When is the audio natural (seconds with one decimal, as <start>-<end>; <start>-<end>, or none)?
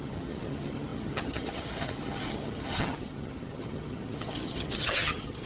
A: none